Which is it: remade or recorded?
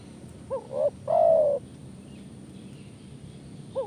recorded